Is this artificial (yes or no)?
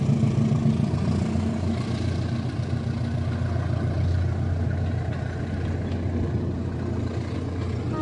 no